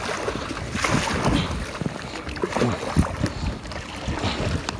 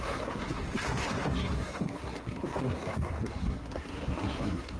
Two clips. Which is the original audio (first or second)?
first